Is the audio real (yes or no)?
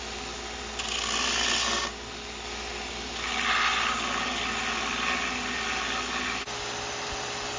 yes